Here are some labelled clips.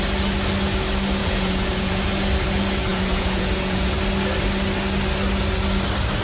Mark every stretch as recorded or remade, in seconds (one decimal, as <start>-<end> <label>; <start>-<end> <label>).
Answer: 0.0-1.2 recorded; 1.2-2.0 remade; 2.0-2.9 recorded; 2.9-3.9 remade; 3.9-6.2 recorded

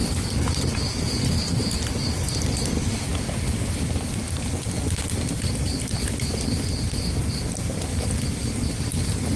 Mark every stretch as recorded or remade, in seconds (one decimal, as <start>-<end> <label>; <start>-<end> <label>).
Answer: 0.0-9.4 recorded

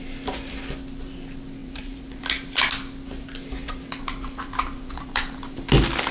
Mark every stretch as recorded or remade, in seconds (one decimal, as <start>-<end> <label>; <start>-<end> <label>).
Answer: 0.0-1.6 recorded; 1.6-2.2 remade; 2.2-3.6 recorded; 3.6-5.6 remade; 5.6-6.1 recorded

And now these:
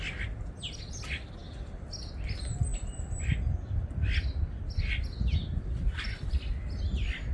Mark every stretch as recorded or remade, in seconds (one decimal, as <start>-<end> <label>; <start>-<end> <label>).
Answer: 0.0-7.3 recorded

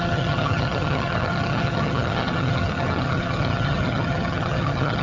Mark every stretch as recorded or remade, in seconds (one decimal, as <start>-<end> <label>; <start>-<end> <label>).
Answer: 0.0-5.0 remade

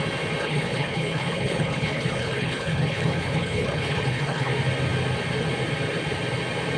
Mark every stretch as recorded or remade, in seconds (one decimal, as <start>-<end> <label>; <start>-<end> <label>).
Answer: 0.0-0.4 recorded; 0.4-4.5 remade; 4.5-6.8 recorded

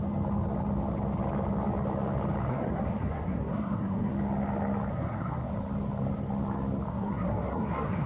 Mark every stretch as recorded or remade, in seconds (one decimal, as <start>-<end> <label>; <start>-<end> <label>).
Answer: 0.0-2.5 recorded; 2.5-4.1 remade; 4.1-4.9 recorded; 4.9-5.5 remade; 5.5-6.9 recorded; 6.9-8.1 remade

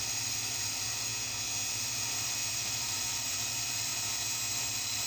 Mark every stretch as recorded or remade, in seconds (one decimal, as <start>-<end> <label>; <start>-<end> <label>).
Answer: 0.0-1.1 remade; 1.1-1.7 recorded; 1.7-3.9 remade; 3.9-4.5 recorded; 4.5-5.1 remade